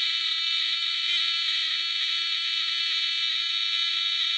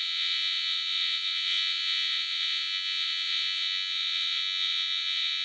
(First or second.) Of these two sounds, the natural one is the first